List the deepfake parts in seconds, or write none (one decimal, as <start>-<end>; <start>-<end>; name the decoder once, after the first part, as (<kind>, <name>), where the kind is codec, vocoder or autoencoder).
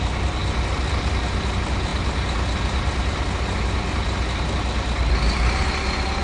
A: none